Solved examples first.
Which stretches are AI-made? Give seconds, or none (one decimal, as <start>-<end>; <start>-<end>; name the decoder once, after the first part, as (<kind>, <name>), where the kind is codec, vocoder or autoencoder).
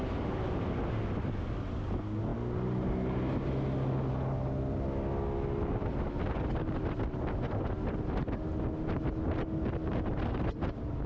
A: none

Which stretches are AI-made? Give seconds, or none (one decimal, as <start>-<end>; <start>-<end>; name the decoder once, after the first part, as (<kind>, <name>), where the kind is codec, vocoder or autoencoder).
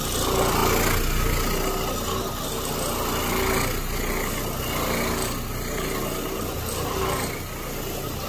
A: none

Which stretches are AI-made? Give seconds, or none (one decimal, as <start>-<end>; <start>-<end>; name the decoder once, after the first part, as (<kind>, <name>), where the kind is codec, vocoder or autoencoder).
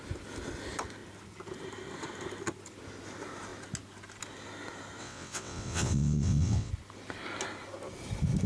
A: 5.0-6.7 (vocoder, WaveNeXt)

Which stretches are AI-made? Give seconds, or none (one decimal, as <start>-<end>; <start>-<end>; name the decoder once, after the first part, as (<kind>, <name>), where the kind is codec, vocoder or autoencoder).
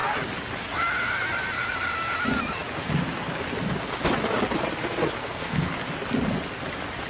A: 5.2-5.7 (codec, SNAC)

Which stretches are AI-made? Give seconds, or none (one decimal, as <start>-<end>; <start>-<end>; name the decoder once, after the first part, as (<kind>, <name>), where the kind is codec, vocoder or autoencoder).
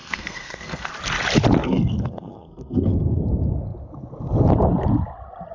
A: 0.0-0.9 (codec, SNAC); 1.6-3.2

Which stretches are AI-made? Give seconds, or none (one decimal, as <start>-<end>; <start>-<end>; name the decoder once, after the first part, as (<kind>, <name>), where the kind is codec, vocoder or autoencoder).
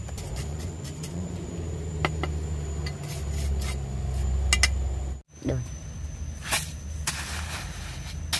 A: 0.5-1.5 (vocoder, Vocos)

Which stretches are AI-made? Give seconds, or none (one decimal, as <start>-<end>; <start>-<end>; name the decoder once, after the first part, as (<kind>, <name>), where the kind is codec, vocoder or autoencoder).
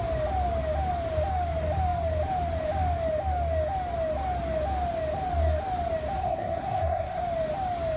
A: 6.2-7.2 (codec, SNAC)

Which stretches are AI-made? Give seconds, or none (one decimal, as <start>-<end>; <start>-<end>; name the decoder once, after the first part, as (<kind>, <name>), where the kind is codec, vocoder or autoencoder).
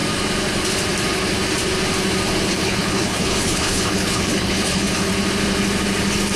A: 2.5-5.1 (codec, HILCodec)